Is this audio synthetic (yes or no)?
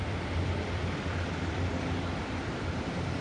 yes